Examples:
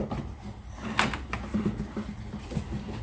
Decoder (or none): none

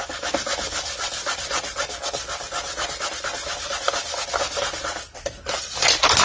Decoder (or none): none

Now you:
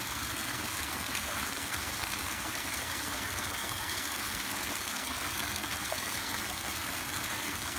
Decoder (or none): codec, SNAC